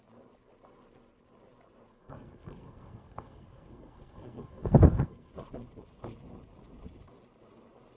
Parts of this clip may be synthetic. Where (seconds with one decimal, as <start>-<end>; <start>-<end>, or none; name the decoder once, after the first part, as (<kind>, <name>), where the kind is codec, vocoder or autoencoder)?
1.9-5.3 (codec, SNAC)